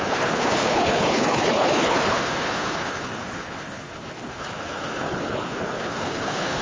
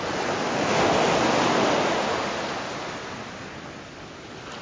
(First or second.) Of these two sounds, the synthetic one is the first